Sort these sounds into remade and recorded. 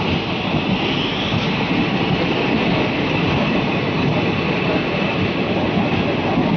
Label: recorded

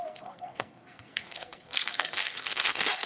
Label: remade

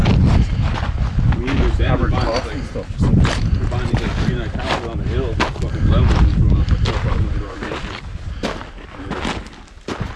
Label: recorded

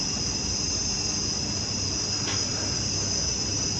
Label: recorded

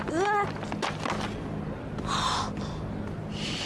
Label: recorded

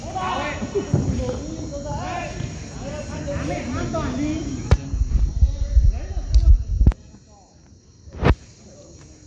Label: recorded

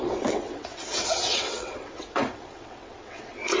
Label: remade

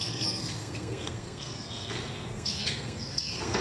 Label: remade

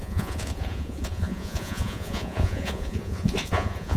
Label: remade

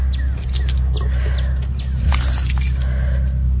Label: recorded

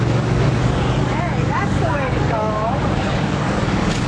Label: remade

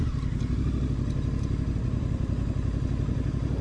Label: recorded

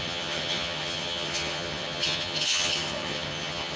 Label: remade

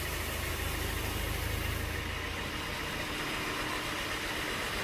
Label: recorded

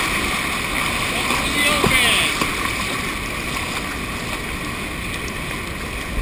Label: recorded